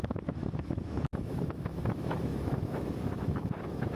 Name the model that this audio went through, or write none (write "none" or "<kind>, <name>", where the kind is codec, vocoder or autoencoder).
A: autoencoder, DAC-VAE